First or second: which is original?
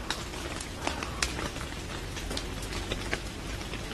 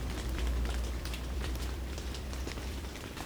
first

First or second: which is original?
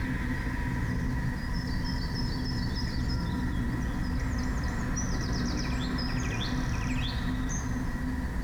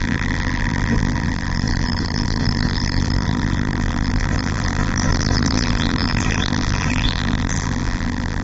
first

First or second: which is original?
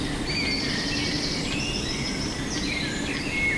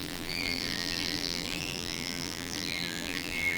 first